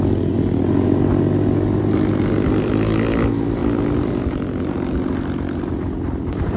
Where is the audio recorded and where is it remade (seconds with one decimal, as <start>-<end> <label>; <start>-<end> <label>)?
0.0-6.6 recorded

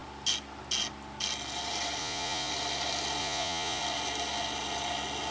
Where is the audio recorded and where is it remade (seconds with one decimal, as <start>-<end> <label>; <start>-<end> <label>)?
0.0-2.0 recorded; 2.0-2.5 remade; 2.5-3.2 recorded; 3.2-3.8 remade; 3.8-5.3 recorded

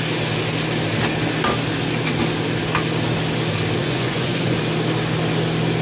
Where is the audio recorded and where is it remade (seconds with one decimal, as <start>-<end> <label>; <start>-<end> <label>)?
0.0-3.8 recorded; 3.8-4.6 remade; 4.6-5.8 recorded

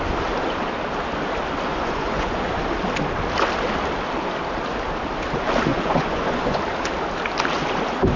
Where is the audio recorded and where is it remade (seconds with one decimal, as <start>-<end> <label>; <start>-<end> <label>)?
0.0-1.7 recorded; 1.7-2.6 remade; 2.6-5.7 recorded; 5.7-6.6 remade; 6.6-8.2 recorded

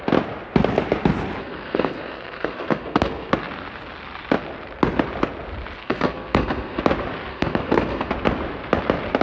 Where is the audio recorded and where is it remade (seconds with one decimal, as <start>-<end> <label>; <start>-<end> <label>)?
0.0-1.4 recorded; 1.4-3.3 remade; 3.3-5.8 recorded; 5.8-6.8 remade; 6.8-7.3 recorded; 7.3-8.1 remade; 8.1-9.2 recorded

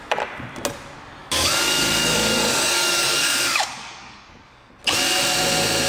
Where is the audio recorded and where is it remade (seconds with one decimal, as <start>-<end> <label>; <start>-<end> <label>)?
0.0-1.2 recorded; 1.2-4.7 remade; 4.7-5.9 recorded

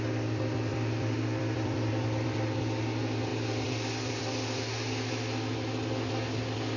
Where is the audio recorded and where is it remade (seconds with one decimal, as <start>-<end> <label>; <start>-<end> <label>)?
0.0-0.7 recorded; 0.7-1.9 remade; 1.9-6.8 recorded